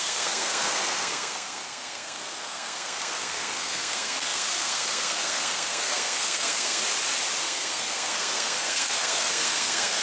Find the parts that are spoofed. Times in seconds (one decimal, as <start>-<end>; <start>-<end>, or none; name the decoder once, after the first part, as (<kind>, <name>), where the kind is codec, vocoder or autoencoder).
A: 0.0-6.8 (codec, SNAC); 7.4-10.0